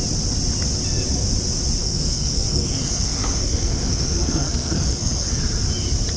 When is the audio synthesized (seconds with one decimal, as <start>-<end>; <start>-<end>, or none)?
1.8-5.4